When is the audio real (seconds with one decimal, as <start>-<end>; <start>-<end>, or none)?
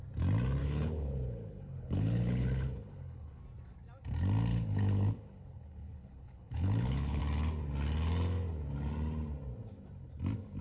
0.0-0.6; 3.4-4.5; 7.2-10.6